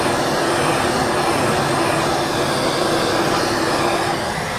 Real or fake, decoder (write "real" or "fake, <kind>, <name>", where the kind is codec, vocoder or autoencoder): real